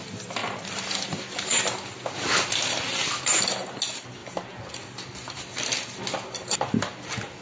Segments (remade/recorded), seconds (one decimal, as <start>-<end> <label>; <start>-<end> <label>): 0.0-0.4 recorded; 0.4-1.6 remade; 1.6-7.4 recorded